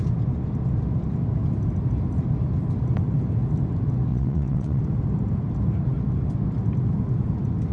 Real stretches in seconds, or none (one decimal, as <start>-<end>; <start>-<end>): 0.0-4.1; 4.8-7.7